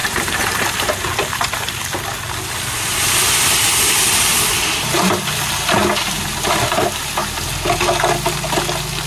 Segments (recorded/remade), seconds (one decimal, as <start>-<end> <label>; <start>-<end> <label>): 0.0-0.6 remade; 0.6-2.9 recorded; 2.9-5.2 remade; 5.2-9.1 recorded